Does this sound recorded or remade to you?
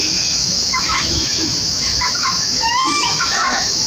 remade